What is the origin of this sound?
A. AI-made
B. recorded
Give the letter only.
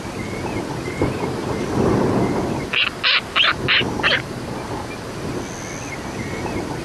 B